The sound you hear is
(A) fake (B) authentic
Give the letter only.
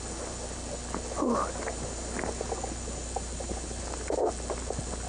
B